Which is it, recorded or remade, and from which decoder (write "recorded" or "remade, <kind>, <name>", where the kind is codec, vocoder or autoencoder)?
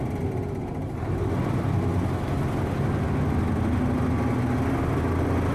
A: recorded